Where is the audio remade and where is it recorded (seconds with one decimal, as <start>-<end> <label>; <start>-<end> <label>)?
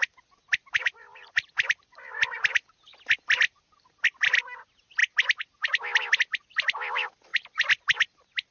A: 0.0-0.8 recorded; 0.8-1.5 remade; 1.5-8.5 recorded